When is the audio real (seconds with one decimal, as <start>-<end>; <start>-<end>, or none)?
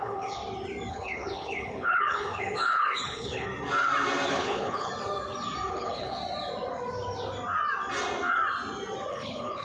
0.4-0.9; 3.5-4.3; 4.9-5.7; 6.2-9.1